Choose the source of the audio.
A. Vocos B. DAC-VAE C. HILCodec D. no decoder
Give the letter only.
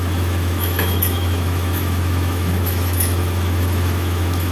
B